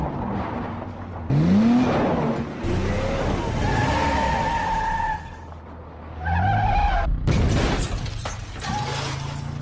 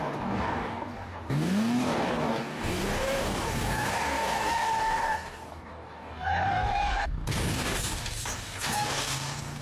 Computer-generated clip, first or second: second